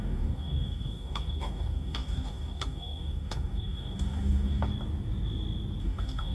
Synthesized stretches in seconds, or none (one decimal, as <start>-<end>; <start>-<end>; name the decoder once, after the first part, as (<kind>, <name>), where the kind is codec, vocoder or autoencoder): 0.0-4.7 (codec, DAC); 5.8-6.3